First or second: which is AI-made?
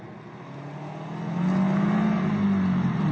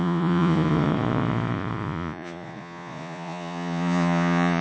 second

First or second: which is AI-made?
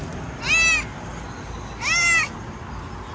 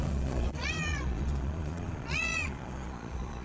second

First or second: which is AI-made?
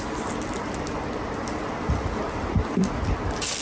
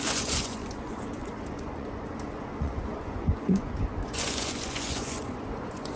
second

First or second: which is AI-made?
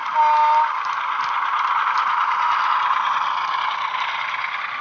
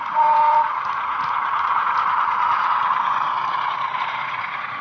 second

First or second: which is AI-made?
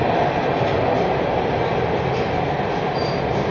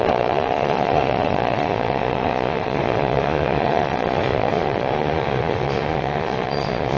second